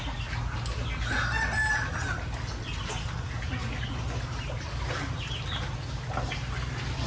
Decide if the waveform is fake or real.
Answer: real